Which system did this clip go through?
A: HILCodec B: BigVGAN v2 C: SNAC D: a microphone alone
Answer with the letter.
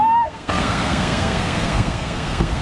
C